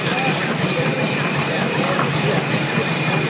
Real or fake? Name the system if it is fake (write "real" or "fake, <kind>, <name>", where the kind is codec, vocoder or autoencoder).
real